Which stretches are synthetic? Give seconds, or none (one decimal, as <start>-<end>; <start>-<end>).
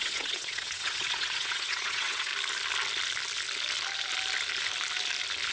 0.0-2.3